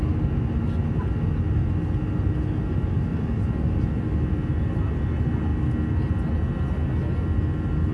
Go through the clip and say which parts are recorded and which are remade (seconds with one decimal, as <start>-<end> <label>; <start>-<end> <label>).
0.0-3.1 recorded; 3.1-4.3 remade; 4.3-7.9 recorded